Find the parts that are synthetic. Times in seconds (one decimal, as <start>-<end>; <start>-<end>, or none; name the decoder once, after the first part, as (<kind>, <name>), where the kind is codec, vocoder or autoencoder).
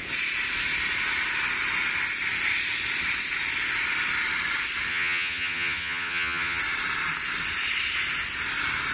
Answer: 4.9-6.6 (vocoder, HiFi-GAN)